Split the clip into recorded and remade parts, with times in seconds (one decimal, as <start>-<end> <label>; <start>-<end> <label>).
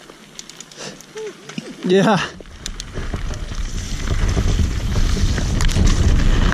0.0-1.8 recorded; 1.8-5.0 remade; 5.0-6.5 recorded